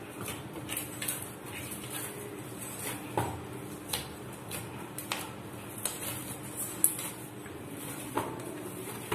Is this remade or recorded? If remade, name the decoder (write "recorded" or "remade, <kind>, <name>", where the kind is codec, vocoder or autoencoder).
recorded